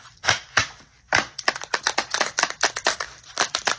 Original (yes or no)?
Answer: yes